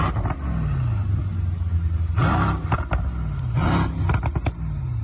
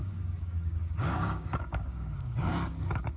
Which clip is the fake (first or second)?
second